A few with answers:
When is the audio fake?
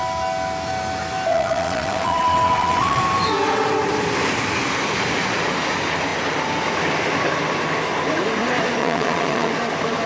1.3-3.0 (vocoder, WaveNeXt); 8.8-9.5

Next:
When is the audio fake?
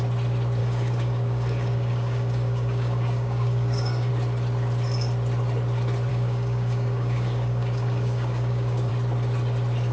0.6-4.1 (codec, DAC); 6.1-8.9